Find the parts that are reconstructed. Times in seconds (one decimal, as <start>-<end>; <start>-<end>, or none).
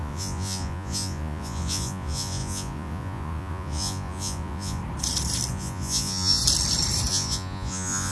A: 0.0-4.8; 5.5-6.4; 7.1-8.1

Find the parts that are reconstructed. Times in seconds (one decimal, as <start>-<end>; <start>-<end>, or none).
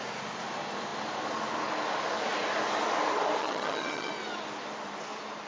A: 3.4-4.1